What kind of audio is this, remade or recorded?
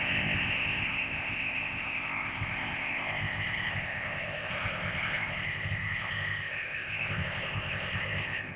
remade